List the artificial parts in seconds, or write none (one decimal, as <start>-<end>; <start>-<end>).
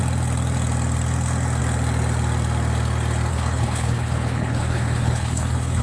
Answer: 3.3-5.8